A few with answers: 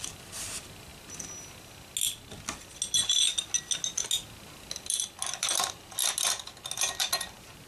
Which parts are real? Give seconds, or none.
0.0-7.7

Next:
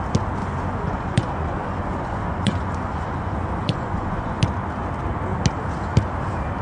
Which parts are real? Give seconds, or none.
0.0-0.4; 4.4-6.6

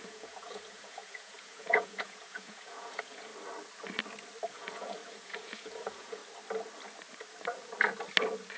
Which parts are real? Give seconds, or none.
3.3-4.5; 6.2-8.6

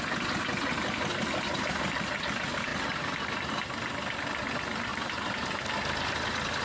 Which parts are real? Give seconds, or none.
0.0-6.6

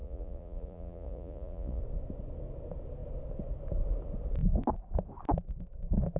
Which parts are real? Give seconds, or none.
1.8-6.2